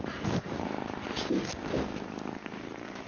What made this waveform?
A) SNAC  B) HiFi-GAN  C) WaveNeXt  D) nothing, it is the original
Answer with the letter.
D